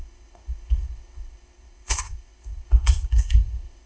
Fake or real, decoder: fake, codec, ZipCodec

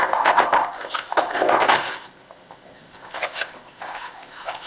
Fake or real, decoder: fake, codec, ZipCodec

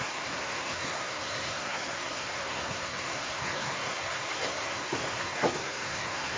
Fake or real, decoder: fake, codec, SNAC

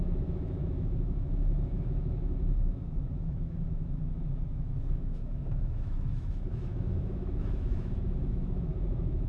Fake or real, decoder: fake, autoencoder, DAC-VAE